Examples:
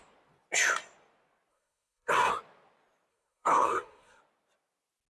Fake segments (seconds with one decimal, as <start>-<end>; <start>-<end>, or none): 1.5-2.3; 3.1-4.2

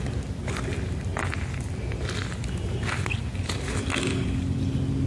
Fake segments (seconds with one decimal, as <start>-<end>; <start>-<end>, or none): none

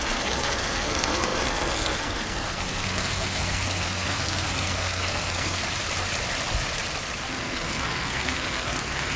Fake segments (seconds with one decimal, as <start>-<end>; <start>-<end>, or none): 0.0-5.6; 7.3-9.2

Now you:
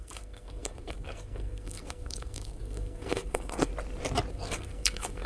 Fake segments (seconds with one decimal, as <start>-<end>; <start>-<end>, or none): 0.0-3.7; 4.3-5.3

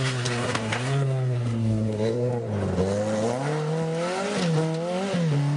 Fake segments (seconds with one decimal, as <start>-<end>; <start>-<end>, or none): 0.0-2.3